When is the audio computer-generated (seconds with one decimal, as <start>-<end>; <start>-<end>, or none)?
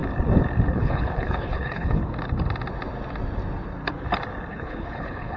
0.7-2.0; 4.5-5.4